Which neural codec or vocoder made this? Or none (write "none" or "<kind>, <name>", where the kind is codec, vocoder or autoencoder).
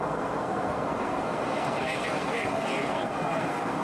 codec, SNAC